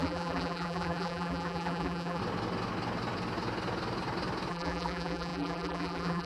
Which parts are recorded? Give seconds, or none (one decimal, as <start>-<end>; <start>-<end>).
2.2-4.5